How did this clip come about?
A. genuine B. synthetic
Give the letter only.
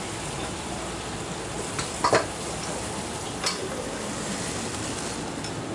A